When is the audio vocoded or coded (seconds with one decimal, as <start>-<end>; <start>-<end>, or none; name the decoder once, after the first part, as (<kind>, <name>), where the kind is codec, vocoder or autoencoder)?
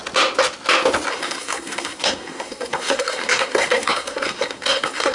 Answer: 1.1-5.1 (codec, SNAC)